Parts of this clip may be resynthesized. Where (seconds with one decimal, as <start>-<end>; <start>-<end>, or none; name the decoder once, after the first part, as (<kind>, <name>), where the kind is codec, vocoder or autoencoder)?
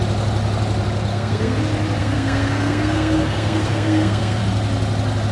1.1-1.6 (codec, SNAC); 2.0-4.4